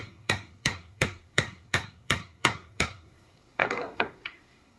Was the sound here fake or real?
fake